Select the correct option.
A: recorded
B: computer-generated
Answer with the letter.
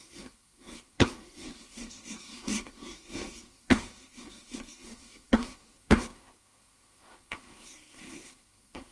B